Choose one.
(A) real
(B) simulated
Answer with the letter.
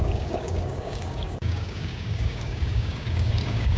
B